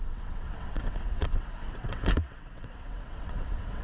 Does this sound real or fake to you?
fake